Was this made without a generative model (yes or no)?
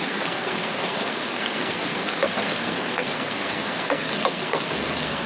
no